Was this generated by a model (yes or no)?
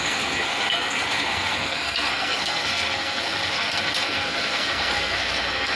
yes